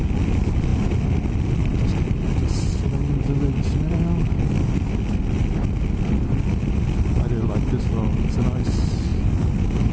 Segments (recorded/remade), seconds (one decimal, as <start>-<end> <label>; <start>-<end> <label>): 0.0-9.9 recorded